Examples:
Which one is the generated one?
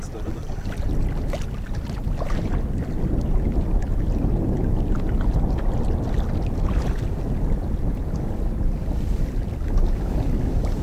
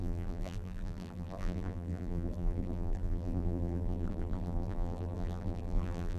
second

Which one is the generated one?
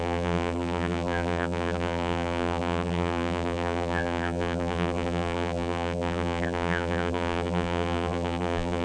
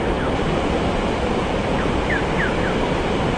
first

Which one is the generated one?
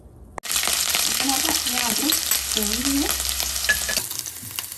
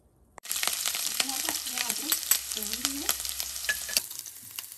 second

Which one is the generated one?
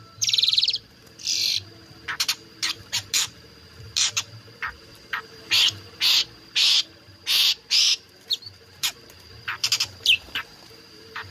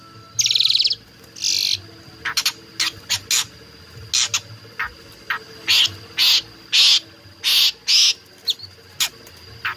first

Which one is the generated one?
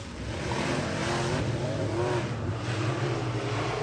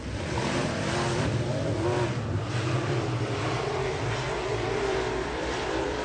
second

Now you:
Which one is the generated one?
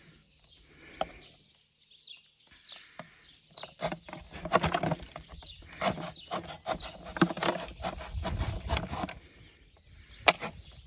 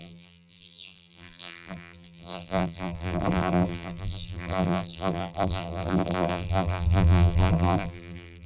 second